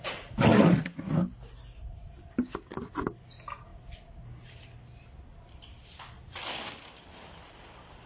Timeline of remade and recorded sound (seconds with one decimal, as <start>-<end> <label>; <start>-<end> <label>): 0.0-8.1 recorded